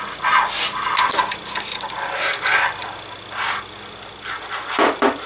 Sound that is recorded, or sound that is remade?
recorded